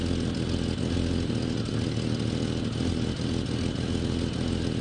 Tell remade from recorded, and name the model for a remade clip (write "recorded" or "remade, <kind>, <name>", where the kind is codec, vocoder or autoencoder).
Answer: recorded